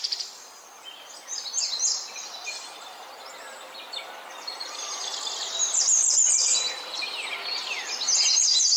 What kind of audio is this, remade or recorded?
recorded